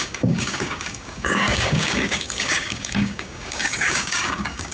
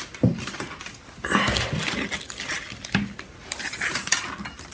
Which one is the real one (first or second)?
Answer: second